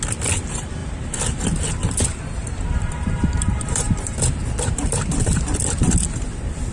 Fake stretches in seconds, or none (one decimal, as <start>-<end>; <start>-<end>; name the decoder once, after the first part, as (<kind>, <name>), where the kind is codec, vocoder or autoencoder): 0.8-1.4 (vocoder, BigVGAN v2); 2.4-5.4